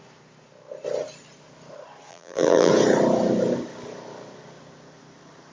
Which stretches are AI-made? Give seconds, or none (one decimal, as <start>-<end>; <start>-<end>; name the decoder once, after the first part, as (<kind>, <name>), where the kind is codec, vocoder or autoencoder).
2.1-2.7 (vocoder, BigVGAN v2)